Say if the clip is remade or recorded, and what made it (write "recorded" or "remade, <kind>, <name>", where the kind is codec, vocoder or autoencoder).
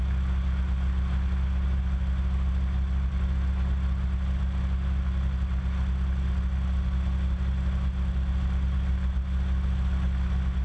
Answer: recorded